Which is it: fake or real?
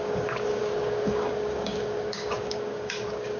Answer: fake